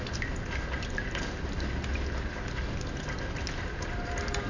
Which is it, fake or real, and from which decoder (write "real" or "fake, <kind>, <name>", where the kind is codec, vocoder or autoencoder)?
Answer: real